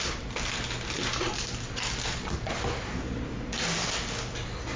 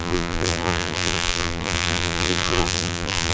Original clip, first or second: first